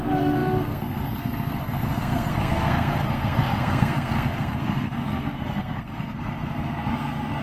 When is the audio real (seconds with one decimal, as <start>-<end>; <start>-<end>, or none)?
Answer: none